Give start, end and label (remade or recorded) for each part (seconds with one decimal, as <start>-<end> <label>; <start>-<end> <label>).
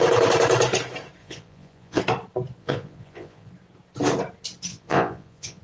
0.0-1.2 recorded; 1.2-2.0 remade; 2.0-2.6 recorded; 2.6-3.5 remade; 3.5-4.7 recorded; 4.7-5.6 remade